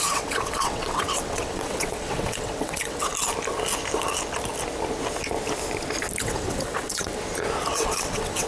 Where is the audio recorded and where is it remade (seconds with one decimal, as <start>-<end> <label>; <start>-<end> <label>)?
0.0-3.1 remade; 3.1-6.2 recorded; 6.2-7.1 remade; 7.1-7.7 recorded; 7.7-8.5 remade